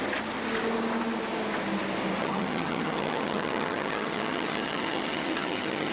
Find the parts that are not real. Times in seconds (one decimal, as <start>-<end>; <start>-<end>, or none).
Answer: 2.2-5.9